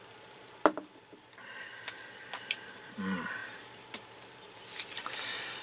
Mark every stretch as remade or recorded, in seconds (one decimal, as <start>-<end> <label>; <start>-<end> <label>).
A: 0.0-5.6 remade